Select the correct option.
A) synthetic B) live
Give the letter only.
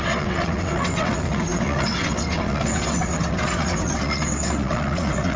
A